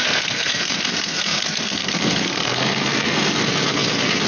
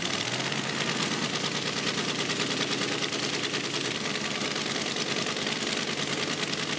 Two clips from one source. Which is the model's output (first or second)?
first